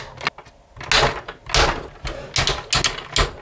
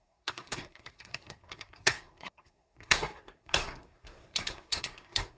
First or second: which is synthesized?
second